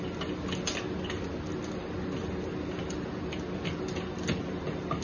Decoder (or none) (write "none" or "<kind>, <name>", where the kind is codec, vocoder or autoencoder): none